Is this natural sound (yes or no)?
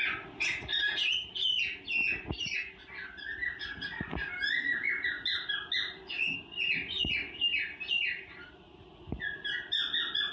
yes